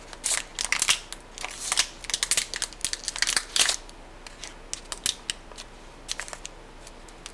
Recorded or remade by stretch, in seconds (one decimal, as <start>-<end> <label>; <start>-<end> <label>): 0.0-7.3 recorded

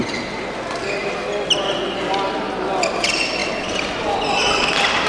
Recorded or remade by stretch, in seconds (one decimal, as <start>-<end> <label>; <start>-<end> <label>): 0.0-5.1 recorded